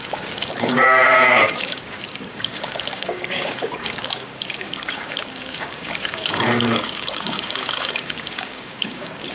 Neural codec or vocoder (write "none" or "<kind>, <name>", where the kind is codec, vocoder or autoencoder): codec, DAC